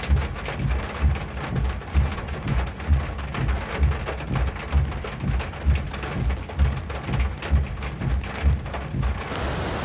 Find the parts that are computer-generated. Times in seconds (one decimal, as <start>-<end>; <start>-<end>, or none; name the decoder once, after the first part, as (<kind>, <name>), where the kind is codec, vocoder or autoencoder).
2.1-3.0 (vocoder, Vocos)